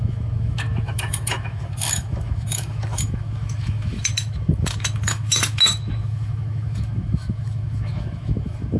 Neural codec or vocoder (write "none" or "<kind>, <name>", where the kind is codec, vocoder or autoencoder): autoencoder, DAC-VAE